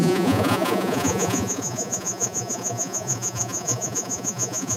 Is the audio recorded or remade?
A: remade